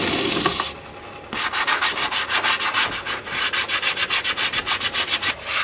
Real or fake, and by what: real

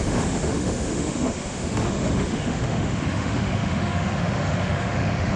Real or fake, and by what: fake, autoencoder, DAC-VAE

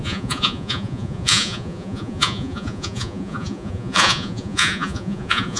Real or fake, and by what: fake, vocoder, Vocos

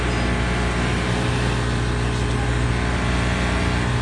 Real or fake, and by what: real